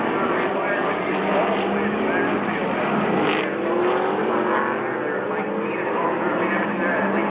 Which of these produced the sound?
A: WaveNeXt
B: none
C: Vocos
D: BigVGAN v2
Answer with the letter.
B